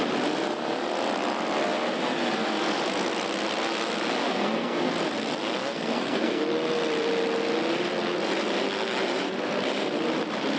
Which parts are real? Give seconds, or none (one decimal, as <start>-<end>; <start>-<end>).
0.0-4.2; 4.9-5.6; 6.4-10.6